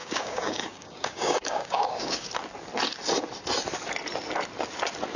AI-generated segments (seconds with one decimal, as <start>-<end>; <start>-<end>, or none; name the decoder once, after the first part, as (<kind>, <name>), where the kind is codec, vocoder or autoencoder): 0.0-2.3 (codec, DAC)

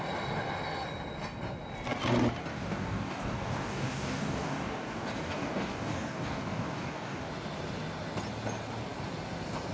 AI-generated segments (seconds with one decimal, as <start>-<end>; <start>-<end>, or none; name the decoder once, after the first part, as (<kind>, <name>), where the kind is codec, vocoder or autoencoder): 2.5-7.3 (codec, DAC)

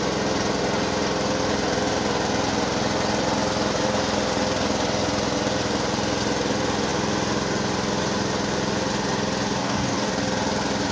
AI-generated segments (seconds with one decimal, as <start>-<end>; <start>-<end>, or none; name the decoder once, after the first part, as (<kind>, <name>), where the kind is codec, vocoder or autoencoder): 9.6-10.1 (codec, DAC)

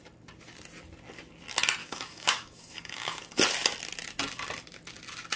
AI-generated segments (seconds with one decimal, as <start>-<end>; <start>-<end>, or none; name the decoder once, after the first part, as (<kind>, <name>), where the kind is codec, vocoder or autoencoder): 1.8-3.2 (codec, DAC)

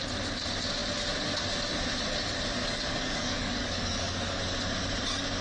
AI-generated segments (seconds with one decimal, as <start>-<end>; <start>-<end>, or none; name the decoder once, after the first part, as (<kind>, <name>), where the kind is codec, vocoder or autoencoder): 2.6-4.4 (codec, DAC)

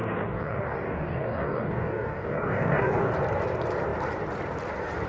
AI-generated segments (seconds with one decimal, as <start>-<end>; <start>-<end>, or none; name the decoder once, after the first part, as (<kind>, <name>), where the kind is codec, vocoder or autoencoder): 0.0-3.1 (codec, DAC)

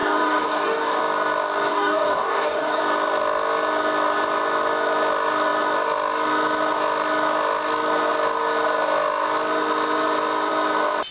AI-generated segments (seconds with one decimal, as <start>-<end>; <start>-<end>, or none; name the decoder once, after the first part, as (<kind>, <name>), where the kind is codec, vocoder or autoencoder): 0.0-1.0 (codec, DAC); 1.7-2.8

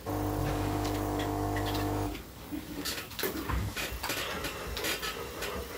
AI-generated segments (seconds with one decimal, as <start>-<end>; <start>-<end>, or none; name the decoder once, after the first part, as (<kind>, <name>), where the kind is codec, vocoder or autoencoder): 0.4-3.9 (codec, DAC)